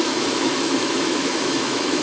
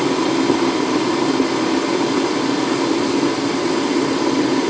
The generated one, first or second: first